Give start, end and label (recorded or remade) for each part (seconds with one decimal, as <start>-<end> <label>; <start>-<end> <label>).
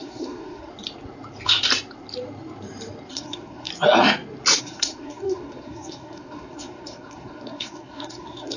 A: 0.0-0.7 remade; 0.7-3.1 recorded; 3.1-3.7 remade; 3.7-4.6 recorded; 4.6-8.6 remade